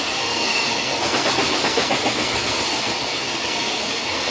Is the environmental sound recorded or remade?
remade